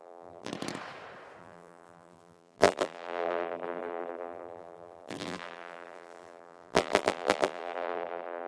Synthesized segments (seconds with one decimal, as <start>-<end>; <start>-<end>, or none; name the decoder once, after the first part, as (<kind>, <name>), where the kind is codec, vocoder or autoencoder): 0.0-0.5 (vocoder, BigVGAN v2); 1.4-8.5